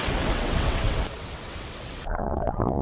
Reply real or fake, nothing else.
fake